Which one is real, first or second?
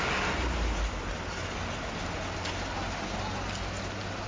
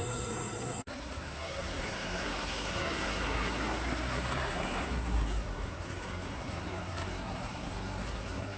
first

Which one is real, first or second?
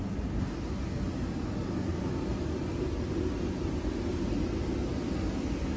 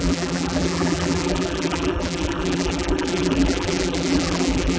first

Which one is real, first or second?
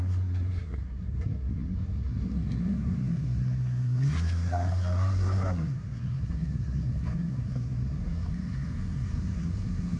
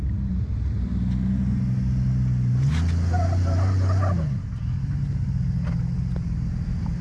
second